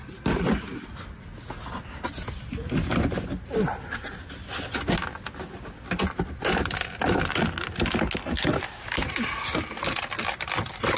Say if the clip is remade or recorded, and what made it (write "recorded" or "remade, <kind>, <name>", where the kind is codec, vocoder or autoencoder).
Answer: recorded